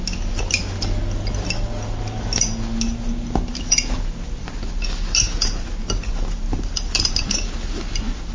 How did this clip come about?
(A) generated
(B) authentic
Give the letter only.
B